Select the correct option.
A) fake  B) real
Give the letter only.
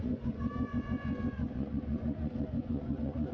A